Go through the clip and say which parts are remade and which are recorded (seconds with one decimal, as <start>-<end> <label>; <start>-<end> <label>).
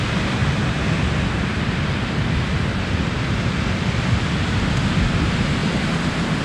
0.0-6.4 recorded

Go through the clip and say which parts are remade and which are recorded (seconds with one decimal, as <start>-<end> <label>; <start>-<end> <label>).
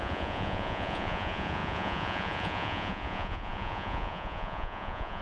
0.0-5.2 remade